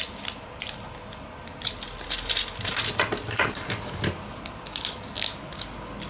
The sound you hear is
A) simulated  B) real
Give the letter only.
B